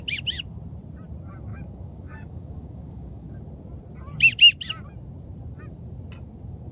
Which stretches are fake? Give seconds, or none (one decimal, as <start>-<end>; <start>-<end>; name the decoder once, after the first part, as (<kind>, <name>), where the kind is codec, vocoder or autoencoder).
1.5-3.4 (codec, DAC)